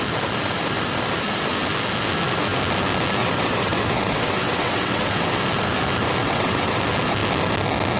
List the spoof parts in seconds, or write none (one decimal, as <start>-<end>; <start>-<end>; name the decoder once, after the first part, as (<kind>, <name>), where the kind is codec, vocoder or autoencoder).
3.2-5.4 (vocoder, WaveNeXt); 6.2-6.8